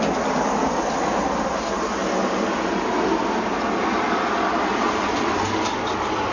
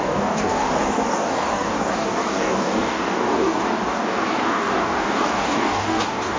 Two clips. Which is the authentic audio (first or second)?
first